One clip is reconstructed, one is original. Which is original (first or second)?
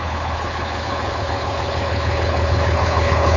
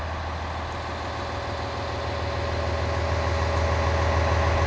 second